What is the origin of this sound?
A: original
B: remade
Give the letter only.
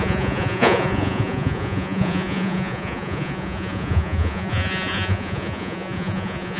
B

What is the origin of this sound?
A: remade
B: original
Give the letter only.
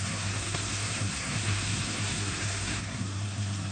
A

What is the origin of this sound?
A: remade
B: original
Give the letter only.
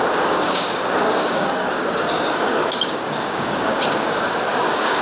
A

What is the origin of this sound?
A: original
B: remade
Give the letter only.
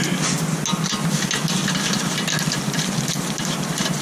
A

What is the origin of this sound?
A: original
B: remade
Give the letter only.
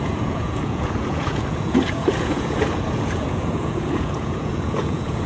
B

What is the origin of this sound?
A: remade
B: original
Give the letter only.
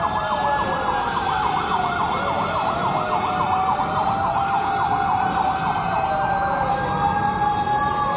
B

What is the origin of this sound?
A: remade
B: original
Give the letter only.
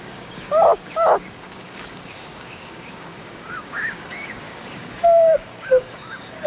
A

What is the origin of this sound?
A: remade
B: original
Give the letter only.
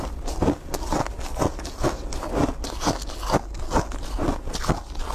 B